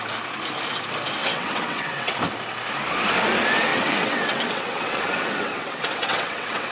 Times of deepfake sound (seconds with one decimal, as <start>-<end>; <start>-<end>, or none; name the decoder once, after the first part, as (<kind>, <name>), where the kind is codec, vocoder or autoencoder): 1.2-2.2 (vocoder, WaveNeXt); 3.7-6.7